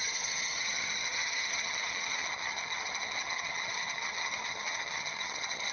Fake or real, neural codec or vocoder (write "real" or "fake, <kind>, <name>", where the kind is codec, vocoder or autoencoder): fake, vocoder, HiFi-GAN